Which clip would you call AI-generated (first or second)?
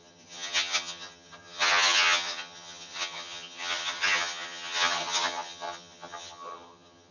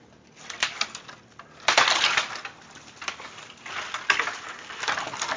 first